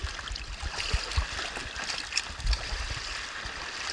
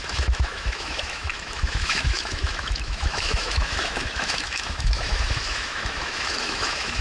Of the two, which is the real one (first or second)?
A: first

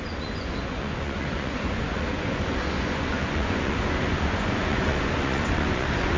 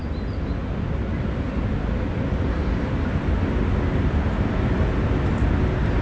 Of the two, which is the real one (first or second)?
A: second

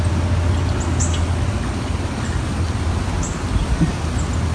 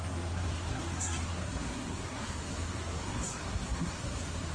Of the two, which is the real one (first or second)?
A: first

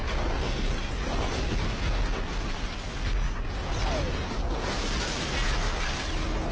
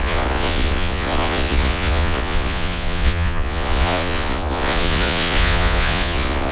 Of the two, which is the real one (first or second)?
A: first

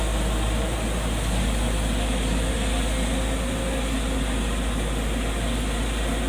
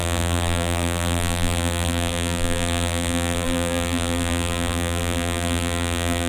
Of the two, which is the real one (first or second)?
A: first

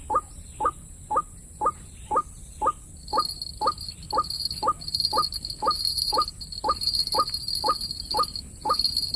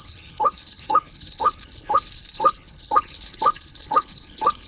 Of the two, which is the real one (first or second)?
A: first